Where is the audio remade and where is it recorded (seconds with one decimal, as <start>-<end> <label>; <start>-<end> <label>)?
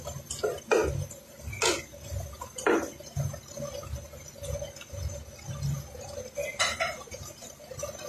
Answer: 0.0-6.4 recorded; 6.4-7.4 remade; 7.4-8.1 recorded